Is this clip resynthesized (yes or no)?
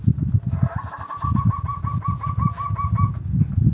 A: no